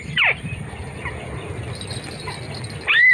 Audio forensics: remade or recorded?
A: remade